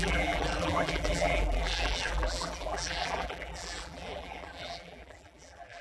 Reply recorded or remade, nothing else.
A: remade